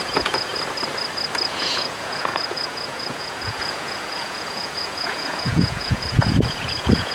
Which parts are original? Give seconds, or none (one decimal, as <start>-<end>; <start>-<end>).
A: 0.5-1.5